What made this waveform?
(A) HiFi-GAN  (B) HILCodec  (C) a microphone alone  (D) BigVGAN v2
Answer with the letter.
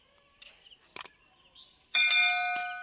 C